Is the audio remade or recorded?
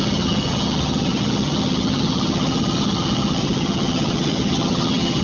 remade